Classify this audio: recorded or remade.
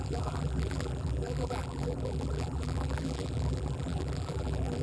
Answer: remade